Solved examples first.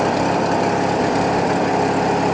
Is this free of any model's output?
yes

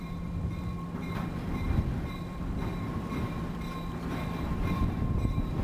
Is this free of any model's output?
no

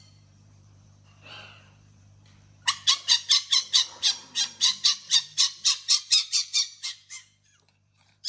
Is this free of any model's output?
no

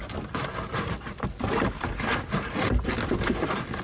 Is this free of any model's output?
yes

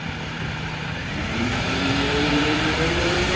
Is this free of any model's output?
no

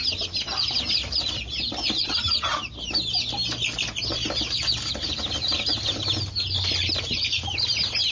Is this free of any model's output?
yes